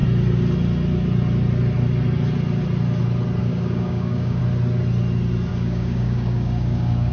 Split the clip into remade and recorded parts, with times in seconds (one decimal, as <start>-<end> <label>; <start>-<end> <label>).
0.0-3.4 recorded; 3.4-4.4 remade; 4.4-5.5 recorded; 5.5-7.1 remade